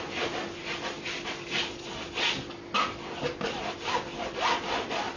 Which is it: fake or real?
real